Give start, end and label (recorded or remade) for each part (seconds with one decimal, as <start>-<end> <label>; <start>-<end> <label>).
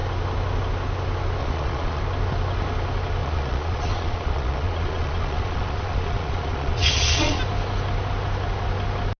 0.0-1.4 recorded; 1.4-2.0 remade; 2.0-3.2 recorded; 3.2-7.4 remade; 7.4-9.2 recorded